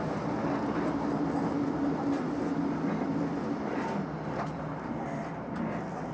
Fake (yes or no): no